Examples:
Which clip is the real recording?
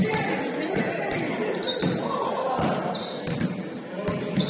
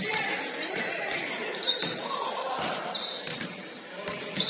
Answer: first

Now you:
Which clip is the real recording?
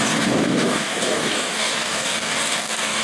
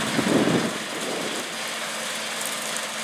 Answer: second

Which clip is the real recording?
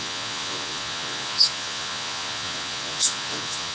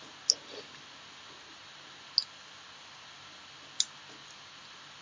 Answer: second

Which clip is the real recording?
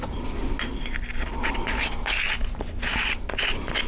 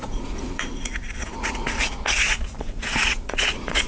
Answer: first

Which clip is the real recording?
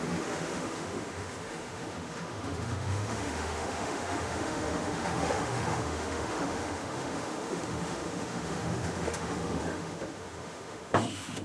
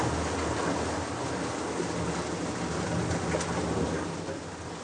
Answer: second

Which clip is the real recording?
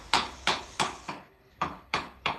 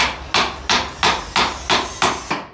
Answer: second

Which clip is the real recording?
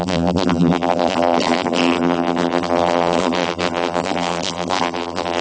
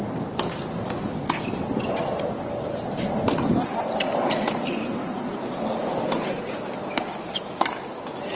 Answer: second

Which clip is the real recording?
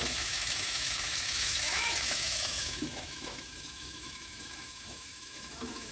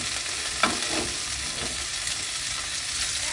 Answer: second